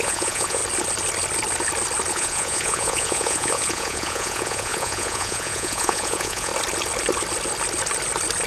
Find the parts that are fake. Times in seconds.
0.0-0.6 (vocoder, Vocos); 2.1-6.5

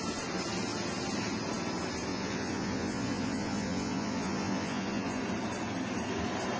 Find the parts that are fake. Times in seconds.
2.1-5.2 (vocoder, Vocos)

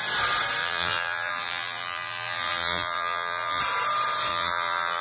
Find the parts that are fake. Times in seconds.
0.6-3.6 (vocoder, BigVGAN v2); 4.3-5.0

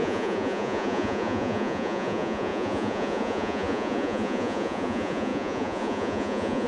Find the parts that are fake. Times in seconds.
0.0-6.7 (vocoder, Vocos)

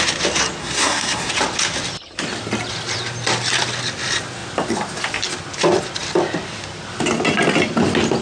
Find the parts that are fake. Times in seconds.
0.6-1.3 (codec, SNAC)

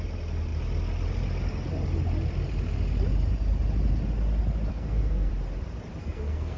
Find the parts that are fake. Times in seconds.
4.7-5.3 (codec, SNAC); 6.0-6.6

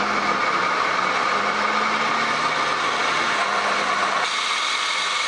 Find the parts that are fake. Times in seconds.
none

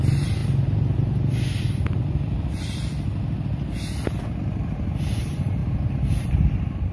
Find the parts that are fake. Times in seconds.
0.0-0.4 (vocoder, BigVGAN v2); 4.4-5.6; 6.2-6.9